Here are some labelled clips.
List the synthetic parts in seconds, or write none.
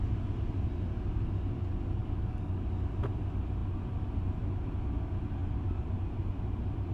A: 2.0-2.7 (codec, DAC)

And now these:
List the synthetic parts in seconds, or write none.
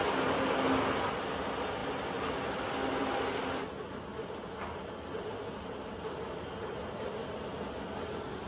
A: none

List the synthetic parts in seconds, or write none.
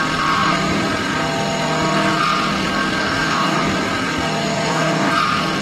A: 3.0-3.6 (codec, DAC); 4.4-5.1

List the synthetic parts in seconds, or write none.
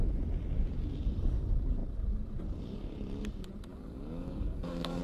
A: 3.7-5.0 (codec, DAC)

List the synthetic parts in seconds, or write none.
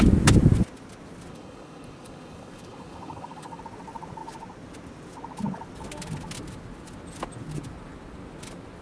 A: 1.3-3.6 (codec, DAC)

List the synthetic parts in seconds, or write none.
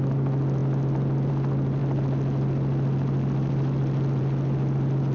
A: none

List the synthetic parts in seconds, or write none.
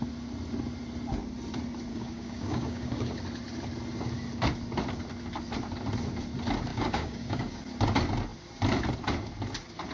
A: 1.9-3.2 (codec, DAC); 6.7-7.6